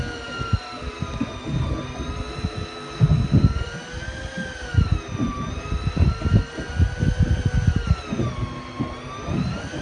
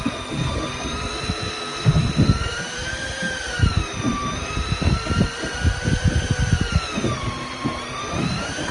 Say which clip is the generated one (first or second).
second